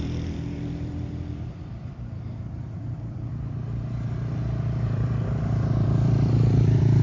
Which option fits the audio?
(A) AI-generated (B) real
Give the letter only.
A